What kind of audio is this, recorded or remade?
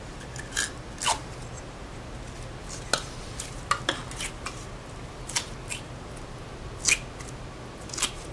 recorded